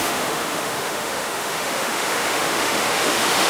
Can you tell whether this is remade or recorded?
remade